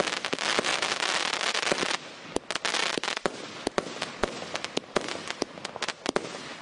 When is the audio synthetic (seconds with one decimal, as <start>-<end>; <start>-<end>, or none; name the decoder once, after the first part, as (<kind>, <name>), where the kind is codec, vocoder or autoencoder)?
none